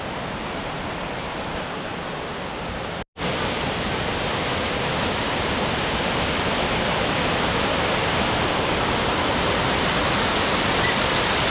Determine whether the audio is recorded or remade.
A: recorded